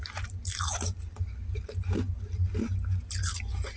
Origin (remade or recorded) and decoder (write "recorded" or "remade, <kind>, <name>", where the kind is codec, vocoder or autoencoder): recorded